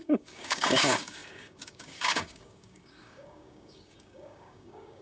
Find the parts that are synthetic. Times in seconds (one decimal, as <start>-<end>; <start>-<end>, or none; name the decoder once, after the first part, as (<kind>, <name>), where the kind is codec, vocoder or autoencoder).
0.0-5.0 (codec, DAC)